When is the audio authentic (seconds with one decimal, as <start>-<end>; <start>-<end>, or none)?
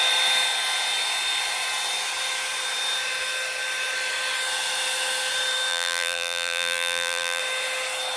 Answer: 0.0-5.7; 7.4-8.2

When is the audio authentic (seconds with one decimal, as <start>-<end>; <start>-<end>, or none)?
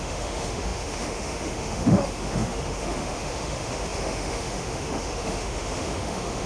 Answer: none